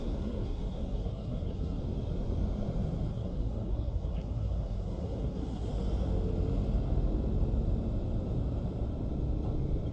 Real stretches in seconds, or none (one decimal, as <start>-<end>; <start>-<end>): 1.8-3.1; 5.7-9.9